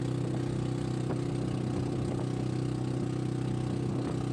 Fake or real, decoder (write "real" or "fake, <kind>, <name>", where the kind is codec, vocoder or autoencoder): real